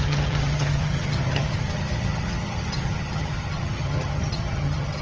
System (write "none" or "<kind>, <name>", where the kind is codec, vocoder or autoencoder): vocoder, HiFi-GAN